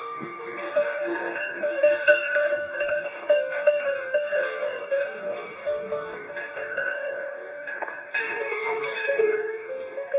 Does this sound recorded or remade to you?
remade